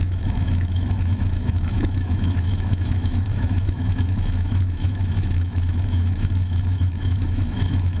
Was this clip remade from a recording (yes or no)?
yes